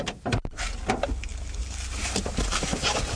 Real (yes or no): yes